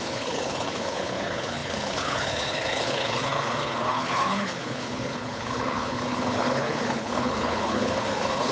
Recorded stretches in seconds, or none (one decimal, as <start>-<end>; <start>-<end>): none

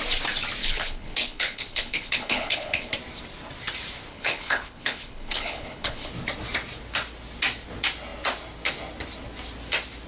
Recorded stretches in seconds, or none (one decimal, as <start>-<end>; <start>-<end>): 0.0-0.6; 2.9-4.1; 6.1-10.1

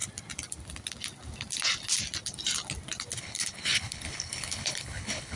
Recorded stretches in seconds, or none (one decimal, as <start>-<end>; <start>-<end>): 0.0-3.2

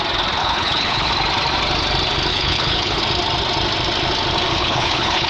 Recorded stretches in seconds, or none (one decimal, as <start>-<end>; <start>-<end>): 0.0-0.4; 1.1-2.3; 3.0-4.5

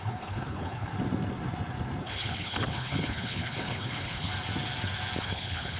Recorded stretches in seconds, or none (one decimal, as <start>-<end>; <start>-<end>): 0.9-2.0; 4.3-5.2

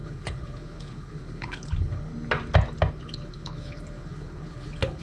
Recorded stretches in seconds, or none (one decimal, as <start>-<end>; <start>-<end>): 2.1-2.9